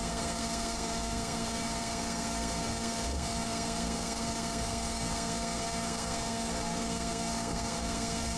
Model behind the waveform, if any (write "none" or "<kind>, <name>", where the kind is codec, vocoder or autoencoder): codec, SNAC